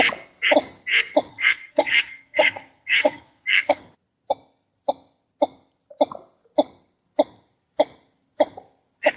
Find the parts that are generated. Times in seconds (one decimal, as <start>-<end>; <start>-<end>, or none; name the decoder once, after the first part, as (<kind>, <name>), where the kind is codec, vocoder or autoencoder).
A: 1.3-3.8 (codec, SNAC)